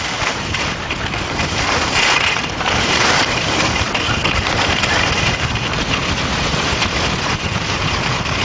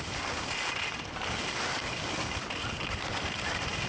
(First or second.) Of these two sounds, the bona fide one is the second